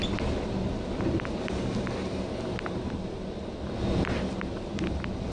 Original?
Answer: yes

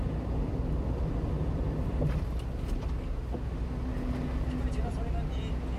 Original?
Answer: yes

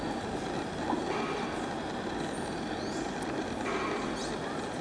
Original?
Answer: yes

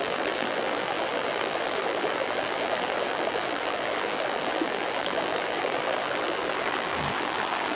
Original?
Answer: no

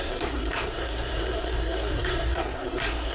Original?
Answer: no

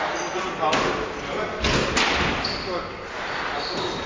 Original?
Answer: yes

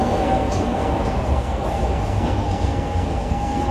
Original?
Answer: no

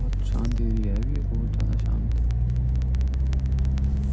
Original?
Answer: yes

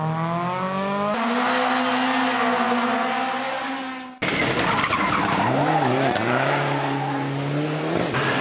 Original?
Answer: yes